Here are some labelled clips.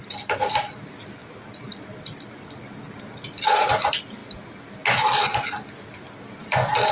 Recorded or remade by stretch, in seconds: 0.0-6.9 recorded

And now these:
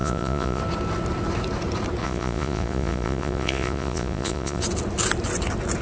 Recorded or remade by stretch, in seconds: 0.0-0.6 remade; 0.6-2.0 recorded; 2.0-4.6 remade; 4.6-5.8 recorded

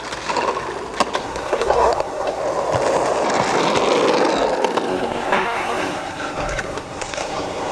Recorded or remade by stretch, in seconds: 0.0-1.2 recorded; 1.2-2.4 remade; 2.4-4.9 recorded; 4.9-7.7 remade

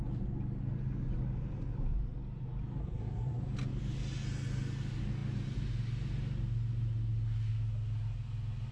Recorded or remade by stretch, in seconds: 0.0-2.8 recorded; 2.8-3.4 remade; 3.4-8.7 recorded

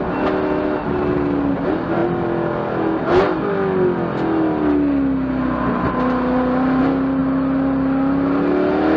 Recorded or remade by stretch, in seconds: 0.0-9.0 recorded

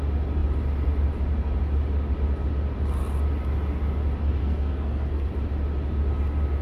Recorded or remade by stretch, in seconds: 0.0-4.4 recorded; 4.4-5.3 remade; 5.3-6.6 recorded

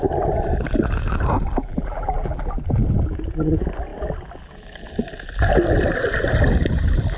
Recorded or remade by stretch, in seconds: 0.0-1.6 recorded; 1.6-2.4 remade; 2.4-7.2 recorded

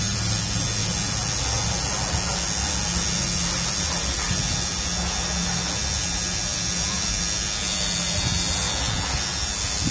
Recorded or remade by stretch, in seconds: 0.0-9.9 recorded